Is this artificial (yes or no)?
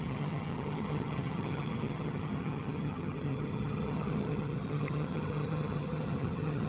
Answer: yes